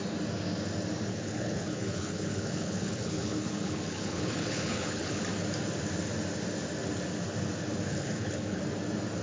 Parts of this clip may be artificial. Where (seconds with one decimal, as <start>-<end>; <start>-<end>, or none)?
1.1-5.2; 7.9-8.6